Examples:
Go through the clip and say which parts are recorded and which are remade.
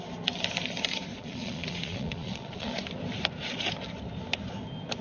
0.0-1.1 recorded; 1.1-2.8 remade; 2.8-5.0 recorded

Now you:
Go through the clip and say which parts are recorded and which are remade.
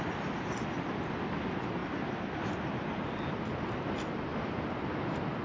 0.0-5.4 recorded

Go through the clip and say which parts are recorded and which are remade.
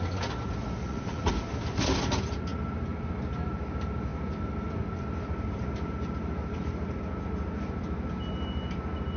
0.0-0.8 recorded; 0.8-1.3 remade; 1.3-9.2 recorded